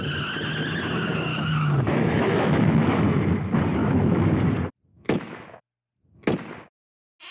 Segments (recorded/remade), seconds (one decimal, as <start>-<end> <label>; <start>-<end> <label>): 0.0-1.3 recorded; 1.3-3.1 remade; 3.1-3.8 recorded; 3.8-4.4 remade; 4.4-4.9 recorded; 4.9-5.6 remade; 5.6-7.3 recorded